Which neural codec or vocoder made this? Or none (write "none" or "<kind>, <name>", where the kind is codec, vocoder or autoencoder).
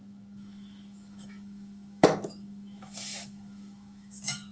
autoencoder, DAC-VAE